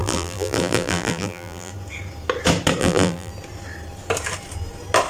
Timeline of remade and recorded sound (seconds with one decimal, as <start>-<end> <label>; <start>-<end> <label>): 0.0-1.7 remade; 1.7-2.8 recorded; 2.8-3.3 remade; 3.3-5.1 recorded